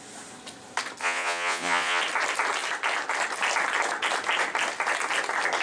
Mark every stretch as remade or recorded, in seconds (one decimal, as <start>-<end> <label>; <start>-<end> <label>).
0.0-1.0 recorded; 1.0-2.0 remade; 2.0-5.6 recorded